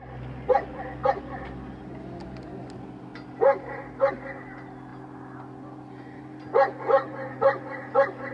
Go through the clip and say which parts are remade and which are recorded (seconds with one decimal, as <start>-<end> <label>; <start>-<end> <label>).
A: 0.0-8.3 recorded